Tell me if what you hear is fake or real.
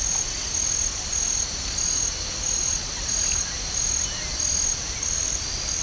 real